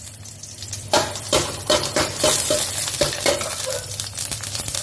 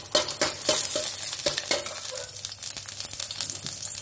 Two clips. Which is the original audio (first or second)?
second